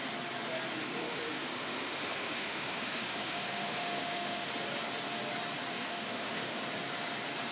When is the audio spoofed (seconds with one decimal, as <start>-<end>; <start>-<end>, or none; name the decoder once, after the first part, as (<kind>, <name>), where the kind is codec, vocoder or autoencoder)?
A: 1.0-4.5 (autoencoder, DAC-VAE); 5.8-6.6